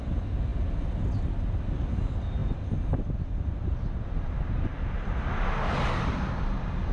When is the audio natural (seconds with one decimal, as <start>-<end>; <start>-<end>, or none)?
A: 0.0-6.9